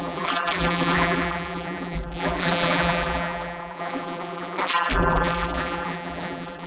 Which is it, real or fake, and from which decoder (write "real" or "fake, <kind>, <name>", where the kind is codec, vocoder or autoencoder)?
fake, vocoder, BigVGAN v2